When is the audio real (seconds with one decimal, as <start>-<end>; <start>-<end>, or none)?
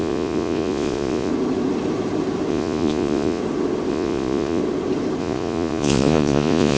1.3-2.5; 3.4-3.9; 4.6-5.2